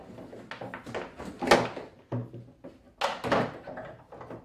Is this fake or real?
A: real